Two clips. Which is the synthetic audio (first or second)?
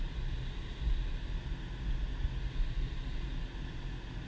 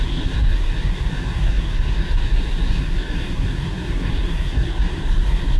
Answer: second